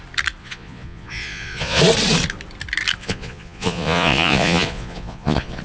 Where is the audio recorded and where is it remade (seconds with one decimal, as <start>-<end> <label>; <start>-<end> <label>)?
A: 0.0-0.4 recorded; 0.4-1.8 remade; 1.8-3.0 recorded; 3.0-5.6 remade